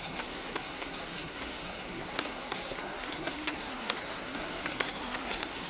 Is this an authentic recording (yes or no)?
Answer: no